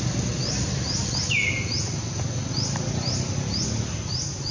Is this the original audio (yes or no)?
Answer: yes